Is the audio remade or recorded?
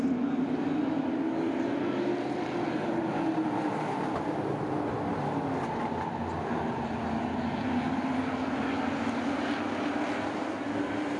recorded